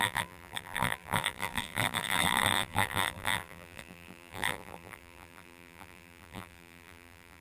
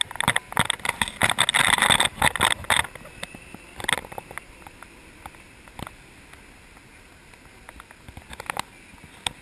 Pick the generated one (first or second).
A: first